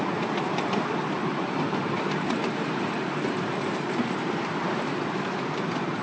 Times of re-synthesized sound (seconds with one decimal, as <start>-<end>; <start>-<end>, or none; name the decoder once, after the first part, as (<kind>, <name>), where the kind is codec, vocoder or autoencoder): 1.2-4.8 (vocoder, BigVGAN v2)